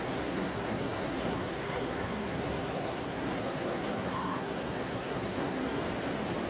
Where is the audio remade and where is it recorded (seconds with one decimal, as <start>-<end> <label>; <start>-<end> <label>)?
0.0-5.8 remade; 5.8-6.5 recorded